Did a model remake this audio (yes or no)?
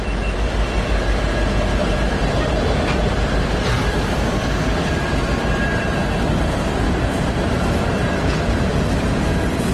yes